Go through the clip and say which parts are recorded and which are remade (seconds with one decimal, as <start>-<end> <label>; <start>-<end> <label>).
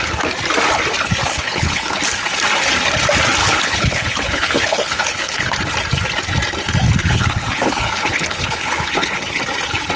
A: 0.0-1.2 recorded; 1.2-2.0 remade; 2.0-3.4 recorded; 3.4-5.6 remade; 5.6-7.0 recorded; 7.0-9.4 remade; 9.4-10.0 recorded